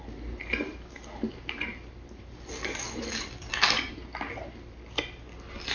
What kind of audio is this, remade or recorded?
recorded